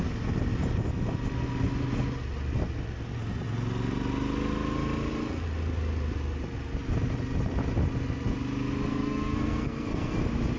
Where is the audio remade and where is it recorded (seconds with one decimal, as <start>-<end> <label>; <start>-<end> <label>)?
0.0-8.9 recorded; 8.9-10.2 remade; 10.2-10.6 recorded